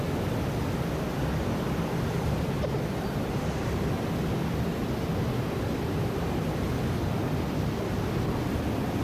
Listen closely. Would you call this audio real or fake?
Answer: real